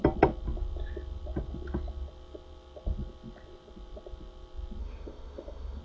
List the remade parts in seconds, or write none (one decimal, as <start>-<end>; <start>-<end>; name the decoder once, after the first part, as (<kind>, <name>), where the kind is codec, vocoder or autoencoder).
4.8-5.8 (autoencoder, DAC-VAE)